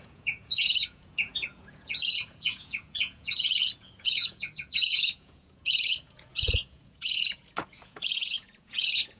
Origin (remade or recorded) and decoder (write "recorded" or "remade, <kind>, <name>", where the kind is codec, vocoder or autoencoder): remade, vocoder, Vocos